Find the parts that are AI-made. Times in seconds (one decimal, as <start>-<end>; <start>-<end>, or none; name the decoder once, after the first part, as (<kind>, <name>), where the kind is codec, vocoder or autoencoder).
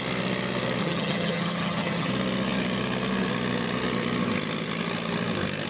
0.8-2.1 (vocoder, HiFi-GAN)